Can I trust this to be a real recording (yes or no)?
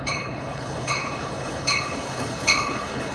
no